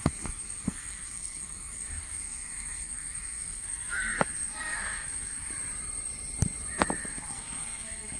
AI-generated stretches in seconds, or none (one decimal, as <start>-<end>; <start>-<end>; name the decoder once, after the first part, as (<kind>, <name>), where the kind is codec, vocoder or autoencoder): 0.0-5.5 (codec, SNAC); 7.1-8.2